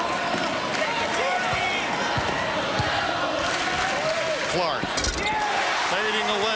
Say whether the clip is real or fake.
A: real